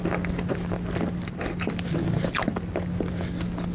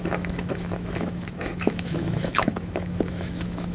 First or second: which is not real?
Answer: second